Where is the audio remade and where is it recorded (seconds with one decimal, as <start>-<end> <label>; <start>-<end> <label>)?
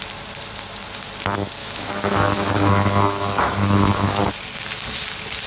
0.0-1.6 recorded; 1.6-4.2 remade; 4.2-5.5 recorded